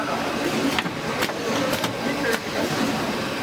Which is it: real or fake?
fake